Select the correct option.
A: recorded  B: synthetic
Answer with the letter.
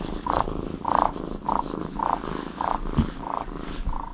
B